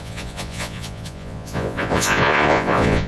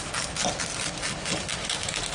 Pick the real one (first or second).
second